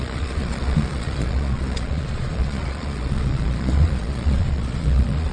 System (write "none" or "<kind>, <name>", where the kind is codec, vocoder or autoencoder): vocoder, Vocos